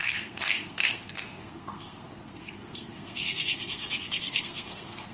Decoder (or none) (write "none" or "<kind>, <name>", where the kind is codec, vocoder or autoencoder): codec, SNAC